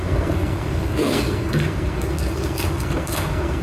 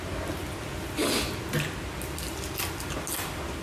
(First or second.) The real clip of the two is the second